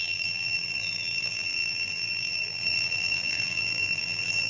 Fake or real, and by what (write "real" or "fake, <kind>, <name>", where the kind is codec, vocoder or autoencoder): fake, vocoder, BigVGAN v2